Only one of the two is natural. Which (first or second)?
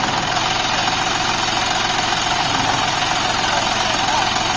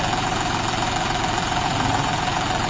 first